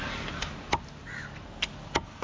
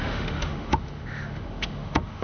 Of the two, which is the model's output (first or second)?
second